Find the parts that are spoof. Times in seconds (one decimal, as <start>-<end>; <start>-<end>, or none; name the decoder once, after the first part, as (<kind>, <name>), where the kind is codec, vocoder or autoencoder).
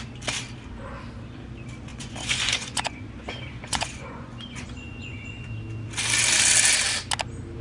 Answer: 1.9-5.5 (vocoder, Vocos)